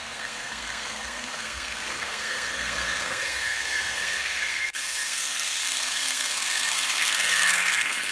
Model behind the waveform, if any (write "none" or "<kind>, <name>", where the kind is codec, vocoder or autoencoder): codec, SNAC